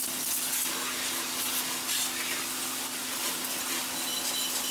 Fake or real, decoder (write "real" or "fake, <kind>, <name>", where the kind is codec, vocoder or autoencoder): real